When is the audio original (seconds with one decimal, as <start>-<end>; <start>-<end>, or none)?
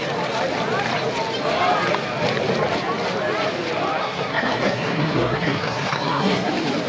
0.0-4.0; 6.5-6.9